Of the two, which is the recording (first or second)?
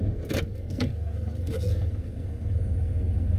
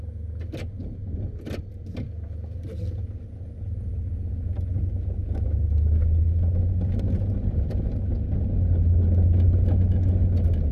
second